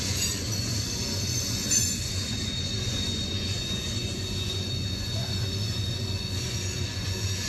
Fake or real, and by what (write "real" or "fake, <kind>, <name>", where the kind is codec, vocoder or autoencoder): fake, vocoder, Vocos